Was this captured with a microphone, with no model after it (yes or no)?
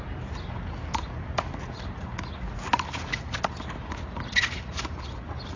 yes